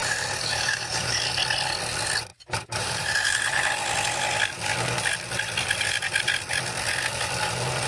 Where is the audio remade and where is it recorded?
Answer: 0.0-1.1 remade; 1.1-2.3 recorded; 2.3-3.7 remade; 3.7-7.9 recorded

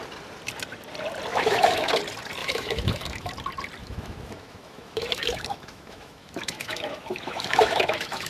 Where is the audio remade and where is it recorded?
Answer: 0.0-1.3 recorded; 1.3-1.9 remade; 1.9-2.4 recorded; 2.4-3.3 remade; 3.3-3.8 recorded; 3.8-8.3 remade